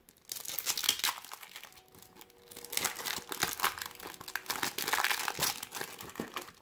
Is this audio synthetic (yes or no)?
no